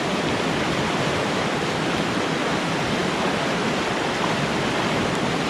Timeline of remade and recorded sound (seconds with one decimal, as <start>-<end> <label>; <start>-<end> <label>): 0.0-5.5 recorded